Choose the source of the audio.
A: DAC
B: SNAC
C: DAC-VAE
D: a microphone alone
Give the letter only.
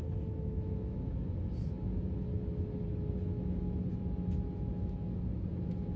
C